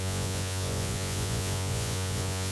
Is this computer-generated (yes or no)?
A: yes